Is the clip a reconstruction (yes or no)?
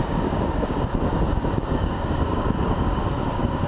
yes